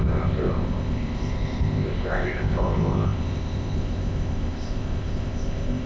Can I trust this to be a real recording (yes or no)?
no